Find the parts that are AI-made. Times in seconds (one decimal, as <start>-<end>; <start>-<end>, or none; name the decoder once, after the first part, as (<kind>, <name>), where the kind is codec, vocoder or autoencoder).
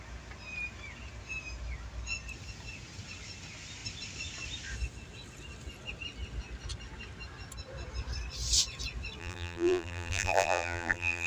9.2-11.3 (vocoder, BigVGAN v2)